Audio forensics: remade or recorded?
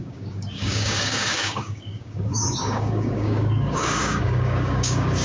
remade